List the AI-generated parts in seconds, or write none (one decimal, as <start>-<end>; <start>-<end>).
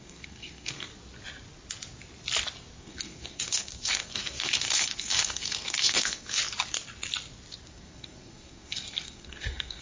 0.0-0.9; 2.8-6.4; 7.7-9.8